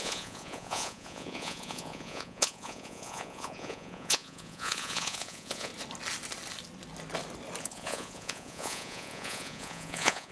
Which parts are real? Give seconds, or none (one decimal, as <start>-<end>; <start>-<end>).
5.7-7.6